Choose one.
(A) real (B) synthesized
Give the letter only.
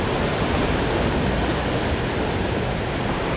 A